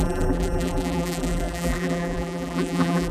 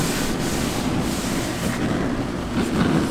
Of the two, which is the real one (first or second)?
second